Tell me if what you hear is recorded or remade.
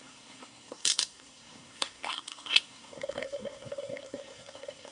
remade